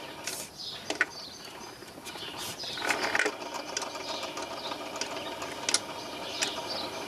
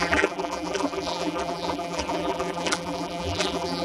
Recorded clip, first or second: first